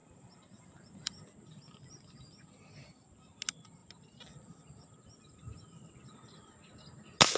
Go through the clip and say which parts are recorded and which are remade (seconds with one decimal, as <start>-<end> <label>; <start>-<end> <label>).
0.0-1.9 remade; 1.9-7.4 recorded